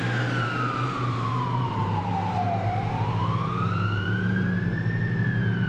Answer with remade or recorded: remade